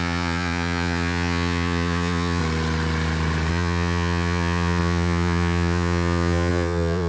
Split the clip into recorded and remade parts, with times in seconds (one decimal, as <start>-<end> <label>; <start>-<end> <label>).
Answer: 0.0-2.4 remade; 2.4-3.5 recorded; 3.5-7.1 remade